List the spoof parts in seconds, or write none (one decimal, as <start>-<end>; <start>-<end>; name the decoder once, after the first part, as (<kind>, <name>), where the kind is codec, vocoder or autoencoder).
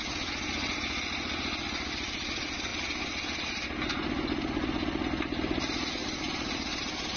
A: none